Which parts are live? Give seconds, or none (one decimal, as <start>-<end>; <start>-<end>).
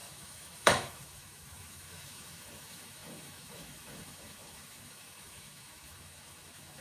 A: none